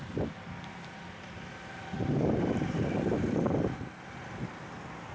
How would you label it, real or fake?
real